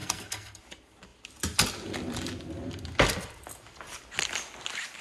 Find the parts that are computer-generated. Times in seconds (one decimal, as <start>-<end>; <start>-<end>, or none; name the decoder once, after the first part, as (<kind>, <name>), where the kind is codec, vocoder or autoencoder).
0.0-0.6 (codec, SNAC)